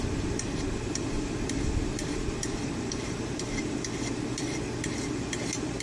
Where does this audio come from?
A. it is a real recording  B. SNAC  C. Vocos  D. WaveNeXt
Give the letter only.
A